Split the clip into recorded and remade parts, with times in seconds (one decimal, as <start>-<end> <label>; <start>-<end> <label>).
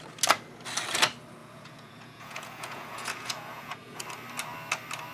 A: 0.0-1.4 recorded; 1.4-4.0 remade; 4.0-5.1 recorded